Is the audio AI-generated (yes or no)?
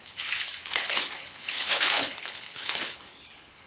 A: yes